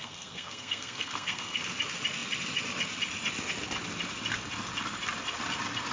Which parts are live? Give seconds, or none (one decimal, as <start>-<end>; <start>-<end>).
1.6-5.9